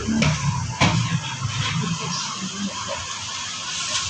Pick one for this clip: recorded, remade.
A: recorded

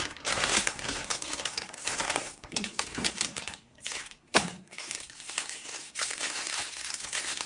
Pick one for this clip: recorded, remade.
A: remade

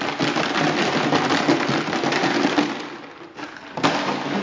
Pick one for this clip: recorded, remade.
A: recorded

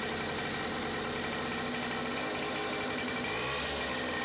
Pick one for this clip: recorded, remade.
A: recorded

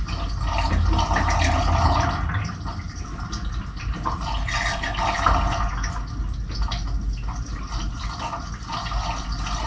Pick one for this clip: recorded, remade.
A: recorded